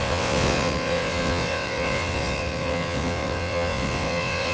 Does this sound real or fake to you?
fake